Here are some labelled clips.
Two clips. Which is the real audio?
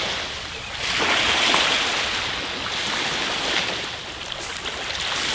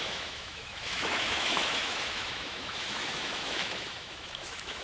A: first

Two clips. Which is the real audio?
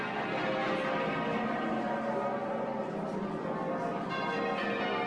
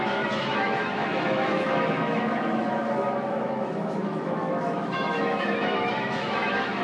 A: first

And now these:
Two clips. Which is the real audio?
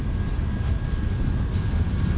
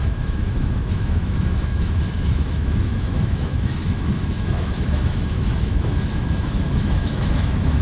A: first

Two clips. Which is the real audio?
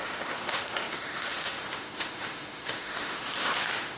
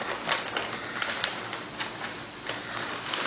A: second